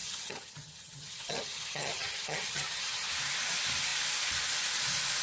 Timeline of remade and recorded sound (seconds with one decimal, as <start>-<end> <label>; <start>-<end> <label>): 0.0-3.1 remade; 3.1-5.2 recorded